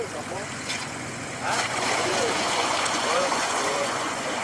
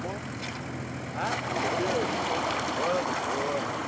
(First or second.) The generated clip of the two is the first